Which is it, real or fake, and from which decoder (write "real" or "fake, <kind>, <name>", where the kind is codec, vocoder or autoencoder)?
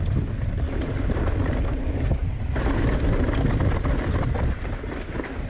real